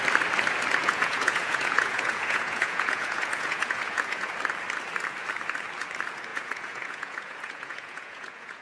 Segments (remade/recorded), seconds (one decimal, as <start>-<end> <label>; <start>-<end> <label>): 0.0-0.8 recorded; 0.8-4.3 remade; 4.3-6.3 recorded; 6.3-8.6 remade